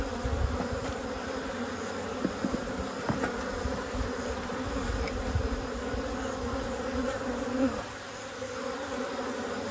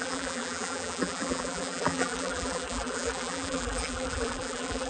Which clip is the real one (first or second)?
first